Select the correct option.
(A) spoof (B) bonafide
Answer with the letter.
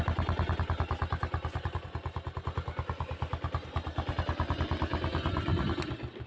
B